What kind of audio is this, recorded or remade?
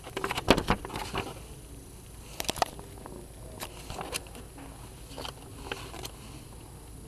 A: recorded